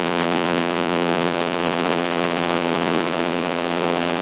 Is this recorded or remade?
remade